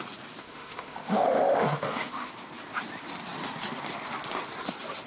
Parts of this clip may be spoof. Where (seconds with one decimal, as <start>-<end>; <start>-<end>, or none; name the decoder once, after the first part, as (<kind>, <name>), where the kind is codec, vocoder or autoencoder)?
0.4-2.3 (autoencoder, DAC-VAE)